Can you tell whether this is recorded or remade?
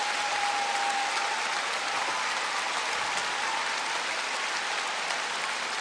recorded